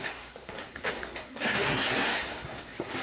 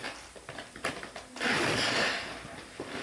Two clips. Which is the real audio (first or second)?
second